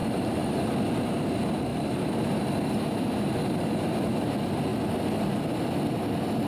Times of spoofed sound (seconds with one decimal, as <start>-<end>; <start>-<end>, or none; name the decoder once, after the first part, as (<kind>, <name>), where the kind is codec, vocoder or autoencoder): 0.0-0.8 (vocoder, BigVGAN v2); 1.7-4.3